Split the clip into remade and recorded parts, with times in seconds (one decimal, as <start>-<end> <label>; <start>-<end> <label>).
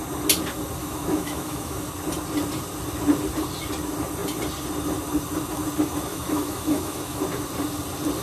0.0-0.8 recorded; 0.8-1.9 remade; 1.9-6.1 recorded; 6.1-7.2 remade; 7.2-8.2 recorded